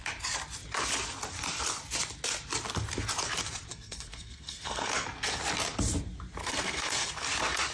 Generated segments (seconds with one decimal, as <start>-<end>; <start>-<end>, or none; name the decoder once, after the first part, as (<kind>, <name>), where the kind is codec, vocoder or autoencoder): 3.7-4.9 (codec, SNAC); 6.4-7.1